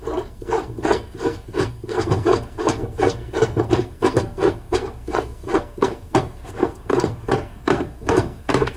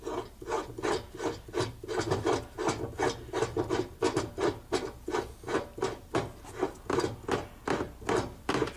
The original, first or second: second